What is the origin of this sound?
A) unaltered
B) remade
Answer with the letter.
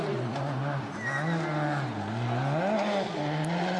A